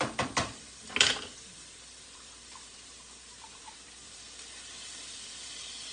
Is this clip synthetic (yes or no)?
yes